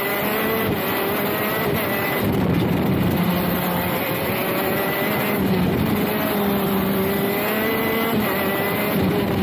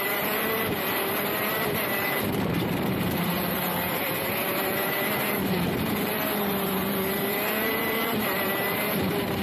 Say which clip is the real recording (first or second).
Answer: first